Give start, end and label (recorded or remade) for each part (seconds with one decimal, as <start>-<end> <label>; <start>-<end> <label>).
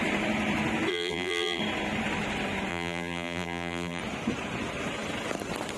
0.0-0.9 recorded; 0.9-1.6 remade; 1.6-2.7 recorded; 2.7-4.0 remade; 4.0-5.8 recorded